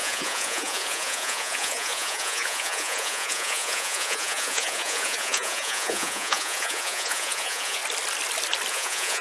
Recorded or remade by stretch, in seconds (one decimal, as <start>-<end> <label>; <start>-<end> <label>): 0.0-7.8 remade; 7.8-8.7 recorded; 8.7-9.2 remade